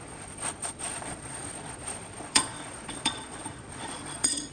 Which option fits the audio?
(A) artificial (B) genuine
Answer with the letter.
A